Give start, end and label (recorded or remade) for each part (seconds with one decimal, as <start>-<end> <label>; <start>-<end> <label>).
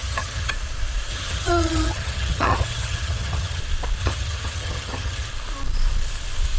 0.0-0.5 remade; 0.5-1.1 recorded; 1.1-3.6 remade; 3.6-4.0 recorded; 4.0-5.3 remade; 5.3-6.6 recorded